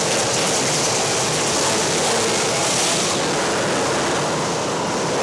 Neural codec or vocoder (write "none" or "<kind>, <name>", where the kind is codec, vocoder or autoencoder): none